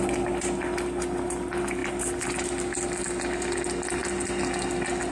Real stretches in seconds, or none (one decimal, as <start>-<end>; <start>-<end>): 0.0-5.1